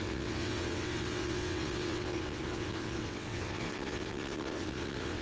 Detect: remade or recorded remade